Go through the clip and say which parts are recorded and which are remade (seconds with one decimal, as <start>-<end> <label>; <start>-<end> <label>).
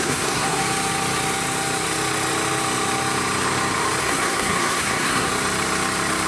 0.0-0.6 remade; 0.6-4.0 recorded; 4.0-5.3 remade; 5.3-6.3 recorded